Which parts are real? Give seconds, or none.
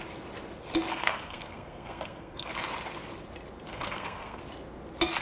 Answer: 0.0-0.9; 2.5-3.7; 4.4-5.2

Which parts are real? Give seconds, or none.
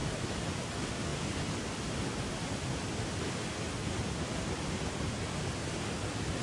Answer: 0.0-6.4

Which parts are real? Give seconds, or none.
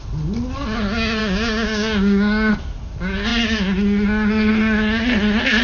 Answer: 0.0-1.2; 2.5-5.6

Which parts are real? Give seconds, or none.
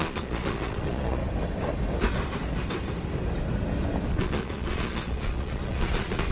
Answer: 1.2-4.1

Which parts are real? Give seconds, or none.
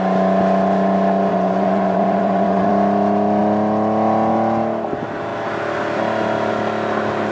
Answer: 0.0-1.3; 2.7-7.3